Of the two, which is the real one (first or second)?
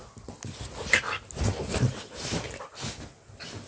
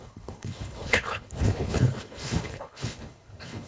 first